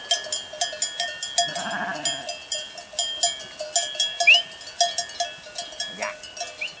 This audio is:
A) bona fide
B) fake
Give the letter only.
A